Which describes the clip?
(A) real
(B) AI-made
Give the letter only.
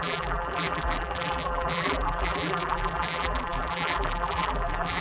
B